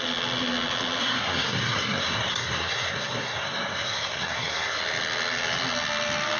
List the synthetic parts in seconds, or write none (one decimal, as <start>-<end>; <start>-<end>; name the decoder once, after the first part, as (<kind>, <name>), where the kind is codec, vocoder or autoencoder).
1.0-4.8 (codec, SNAC)